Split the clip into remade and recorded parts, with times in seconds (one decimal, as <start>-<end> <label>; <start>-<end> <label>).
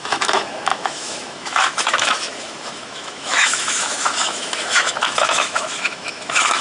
0.0-6.6 remade